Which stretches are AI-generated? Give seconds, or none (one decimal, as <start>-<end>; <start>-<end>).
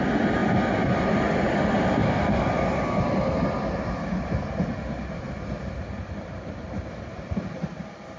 0.0-0.4; 1.4-2.0; 5.2-8.2